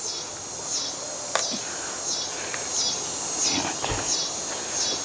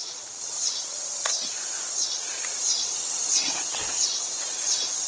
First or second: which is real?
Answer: first